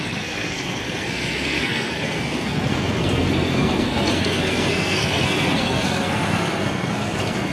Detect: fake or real fake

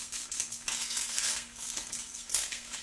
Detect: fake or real fake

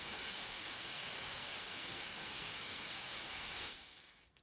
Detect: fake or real fake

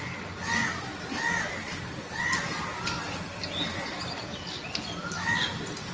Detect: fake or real real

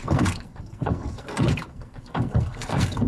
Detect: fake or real fake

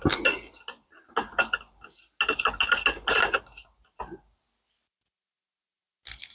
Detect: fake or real real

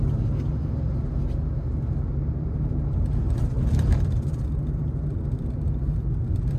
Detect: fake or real real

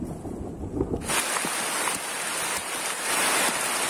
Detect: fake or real real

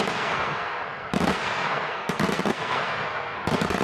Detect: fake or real fake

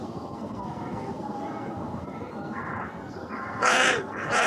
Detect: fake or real fake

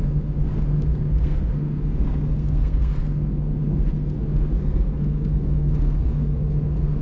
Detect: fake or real fake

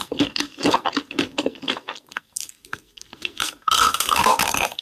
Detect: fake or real fake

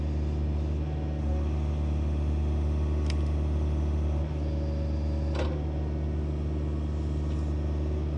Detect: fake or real real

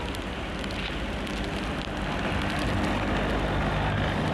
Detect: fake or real real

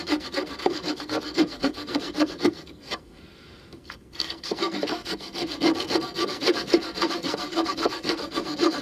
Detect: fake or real fake